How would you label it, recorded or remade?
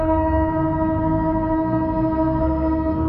remade